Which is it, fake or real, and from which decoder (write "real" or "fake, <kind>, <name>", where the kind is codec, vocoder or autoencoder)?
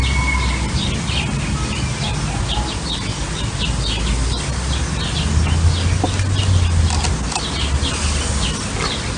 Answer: real